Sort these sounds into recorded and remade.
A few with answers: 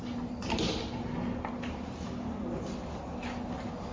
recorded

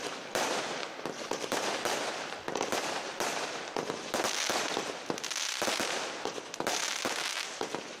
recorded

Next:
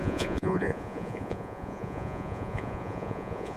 remade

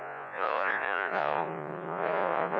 remade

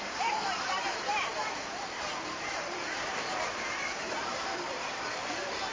remade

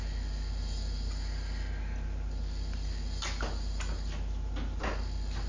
recorded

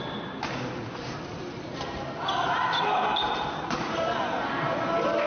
recorded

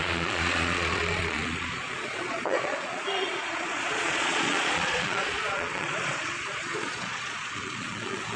remade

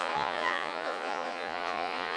remade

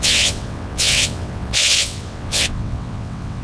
remade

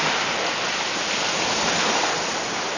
recorded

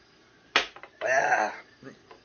recorded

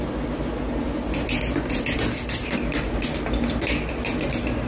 recorded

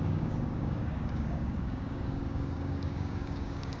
remade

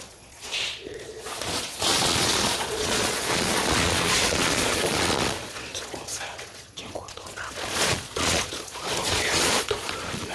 remade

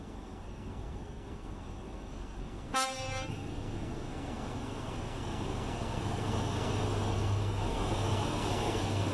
remade